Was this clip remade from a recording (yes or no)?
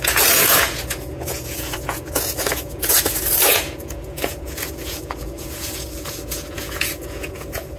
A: yes